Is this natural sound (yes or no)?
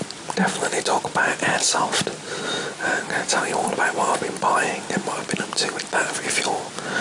yes